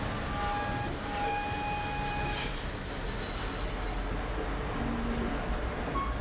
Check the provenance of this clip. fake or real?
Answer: real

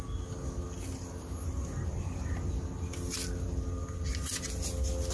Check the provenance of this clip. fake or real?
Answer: real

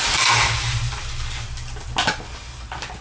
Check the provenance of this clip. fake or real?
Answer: real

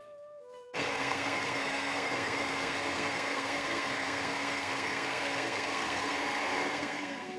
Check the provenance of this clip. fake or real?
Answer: fake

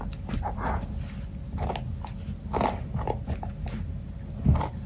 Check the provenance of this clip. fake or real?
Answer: real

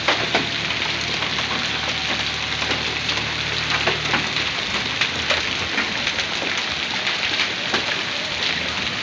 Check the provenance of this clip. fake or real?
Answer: real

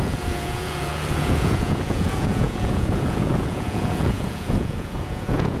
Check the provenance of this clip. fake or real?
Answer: fake